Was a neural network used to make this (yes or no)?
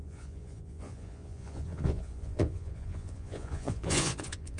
yes